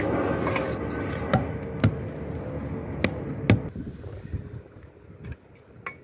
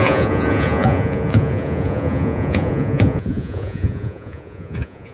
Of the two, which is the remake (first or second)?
second